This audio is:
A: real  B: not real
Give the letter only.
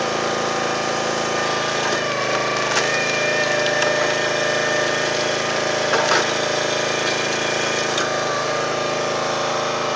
A